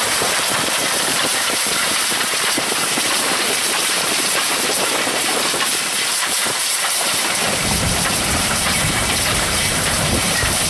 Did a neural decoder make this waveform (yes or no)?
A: yes